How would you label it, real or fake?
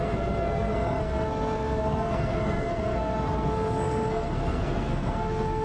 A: fake